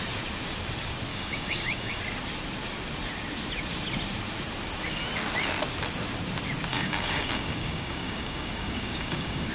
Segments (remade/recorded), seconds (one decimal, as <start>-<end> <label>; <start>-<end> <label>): 0.0-1.1 recorded; 1.1-2.0 remade; 2.0-6.7 recorded; 6.7-9.5 remade